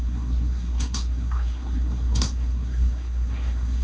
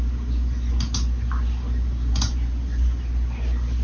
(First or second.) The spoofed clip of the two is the first